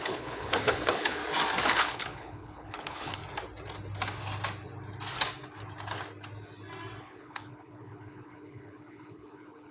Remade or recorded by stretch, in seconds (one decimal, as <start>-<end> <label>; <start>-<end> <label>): 0.0-1.2 remade; 1.2-1.7 recorded; 1.7-3.2 remade; 3.2-7.0 recorded; 7.0-9.7 remade